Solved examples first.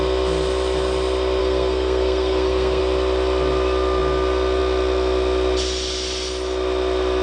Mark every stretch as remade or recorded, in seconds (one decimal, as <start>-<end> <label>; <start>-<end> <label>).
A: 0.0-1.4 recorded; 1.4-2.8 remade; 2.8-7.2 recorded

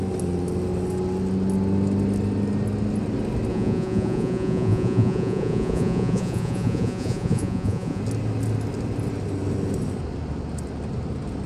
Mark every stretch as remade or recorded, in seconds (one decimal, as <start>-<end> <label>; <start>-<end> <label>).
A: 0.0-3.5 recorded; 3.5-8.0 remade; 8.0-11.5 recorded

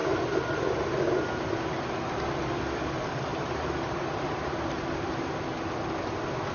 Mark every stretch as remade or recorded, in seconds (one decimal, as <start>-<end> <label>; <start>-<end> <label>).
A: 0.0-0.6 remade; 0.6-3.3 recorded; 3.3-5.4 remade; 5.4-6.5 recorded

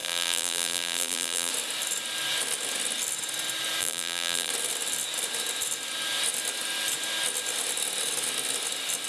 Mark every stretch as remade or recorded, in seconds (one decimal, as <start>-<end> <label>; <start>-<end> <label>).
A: 0.0-1.5 remade; 1.5-3.8 recorded; 3.8-4.5 remade; 4.5-9.1 recorded